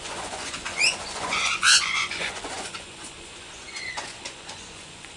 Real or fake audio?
fake